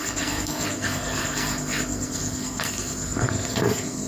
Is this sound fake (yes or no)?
yes